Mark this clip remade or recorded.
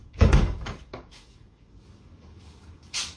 remade